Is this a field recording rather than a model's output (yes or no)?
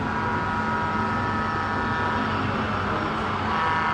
yes